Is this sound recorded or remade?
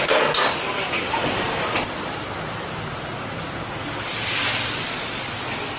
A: recorded